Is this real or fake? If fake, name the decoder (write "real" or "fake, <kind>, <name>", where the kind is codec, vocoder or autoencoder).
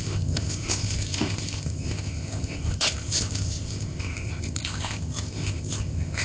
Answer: fake, codec, ZipCodec